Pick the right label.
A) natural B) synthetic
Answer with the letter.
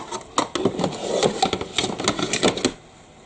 A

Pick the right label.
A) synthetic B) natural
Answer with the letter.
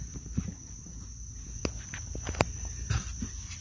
B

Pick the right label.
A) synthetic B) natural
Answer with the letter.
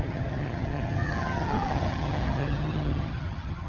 A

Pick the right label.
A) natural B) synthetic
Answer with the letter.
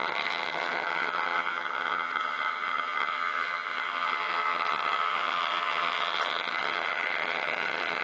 B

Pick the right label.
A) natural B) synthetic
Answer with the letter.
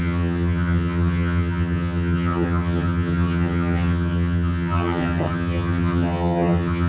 B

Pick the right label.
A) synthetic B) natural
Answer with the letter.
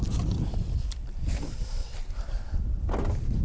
B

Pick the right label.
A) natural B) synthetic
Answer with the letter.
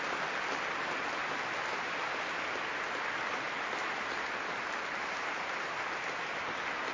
A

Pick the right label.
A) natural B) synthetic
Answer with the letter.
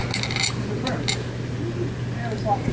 A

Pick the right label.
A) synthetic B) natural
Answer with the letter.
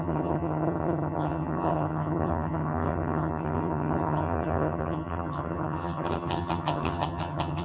A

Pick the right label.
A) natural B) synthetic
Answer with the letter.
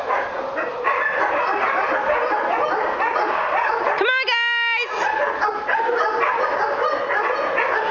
A